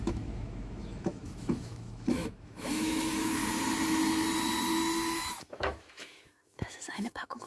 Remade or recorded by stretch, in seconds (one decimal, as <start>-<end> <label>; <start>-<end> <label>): 0.0-3.4 remade; 3.4-5.3 recorded; 5.3-7.5 remade